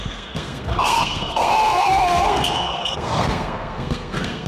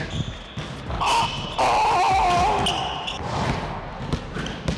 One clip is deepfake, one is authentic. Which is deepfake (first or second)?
first